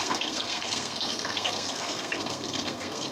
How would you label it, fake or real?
fake